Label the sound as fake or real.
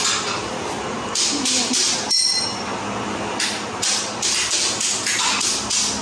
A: real